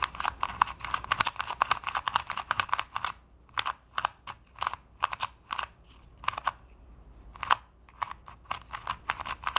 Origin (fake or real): real